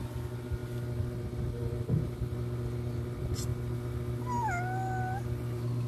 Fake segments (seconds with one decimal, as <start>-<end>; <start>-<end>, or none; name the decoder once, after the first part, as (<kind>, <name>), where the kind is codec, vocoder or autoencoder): none